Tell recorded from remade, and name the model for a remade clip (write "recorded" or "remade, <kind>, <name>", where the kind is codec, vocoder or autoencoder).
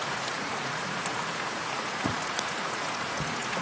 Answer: remade, vocoder, Vocos